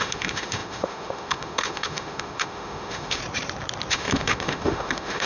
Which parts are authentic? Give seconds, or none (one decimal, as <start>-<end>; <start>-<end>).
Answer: 3.2-3.9